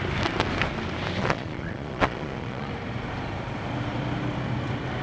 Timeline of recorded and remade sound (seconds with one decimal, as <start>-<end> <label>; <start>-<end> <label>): 0.0-1.2 recorded; 1.2-2.7 remade; 2.7-5.0 recorded